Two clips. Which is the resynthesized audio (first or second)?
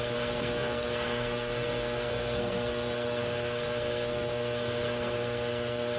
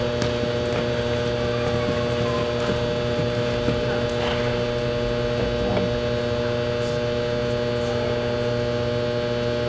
first